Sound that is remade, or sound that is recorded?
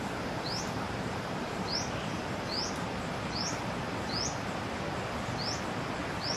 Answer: recorded